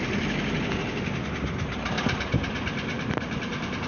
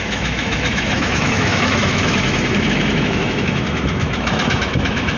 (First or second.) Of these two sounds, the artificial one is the second